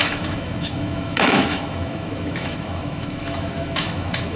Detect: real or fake fake